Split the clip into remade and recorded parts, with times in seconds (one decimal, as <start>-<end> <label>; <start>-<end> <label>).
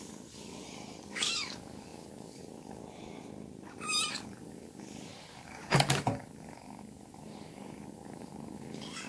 0.0-2.8 remade; 2.8-4.1 recorded; 4.1-9.1 remade